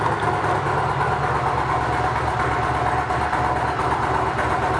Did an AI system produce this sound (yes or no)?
no